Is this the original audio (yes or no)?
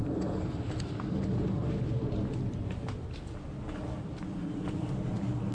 yes